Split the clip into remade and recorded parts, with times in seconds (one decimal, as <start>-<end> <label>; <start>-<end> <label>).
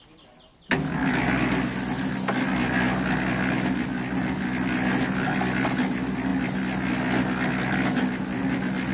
0.0-8.9 recorded